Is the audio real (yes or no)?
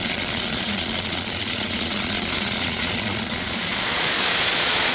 no